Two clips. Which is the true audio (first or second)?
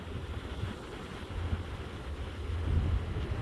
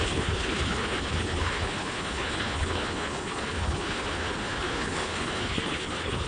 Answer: first